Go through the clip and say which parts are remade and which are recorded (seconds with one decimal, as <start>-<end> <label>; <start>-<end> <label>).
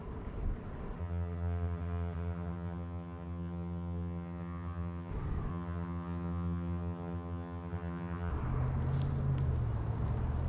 0.0-1.0 recorded; 1.0-5.1 remade; 5.1-5.5 recorded; 5.5-8.3 remade; 8.3-10.5 recorded